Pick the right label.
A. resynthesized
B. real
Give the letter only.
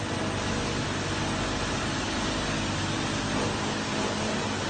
B